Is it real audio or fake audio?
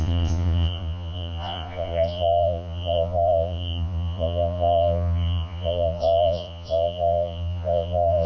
fake